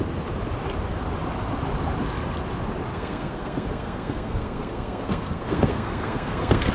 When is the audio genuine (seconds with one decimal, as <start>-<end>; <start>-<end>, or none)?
0.0-2.9